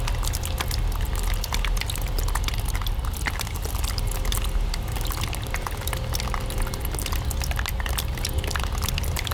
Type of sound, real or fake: real